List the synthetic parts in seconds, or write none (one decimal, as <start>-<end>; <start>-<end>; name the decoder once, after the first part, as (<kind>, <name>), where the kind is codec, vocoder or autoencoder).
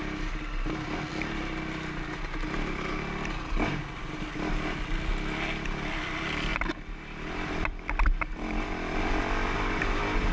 none